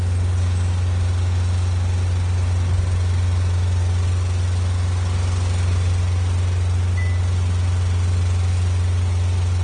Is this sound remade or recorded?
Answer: recorded